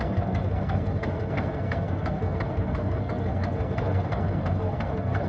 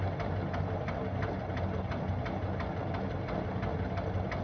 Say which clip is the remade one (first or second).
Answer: first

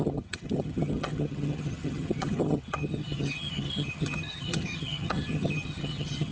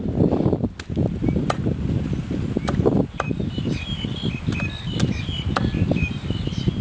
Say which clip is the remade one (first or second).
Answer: first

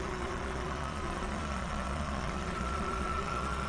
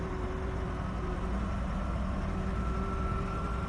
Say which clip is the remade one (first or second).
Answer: first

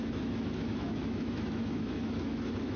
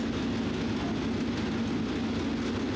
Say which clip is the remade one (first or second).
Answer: first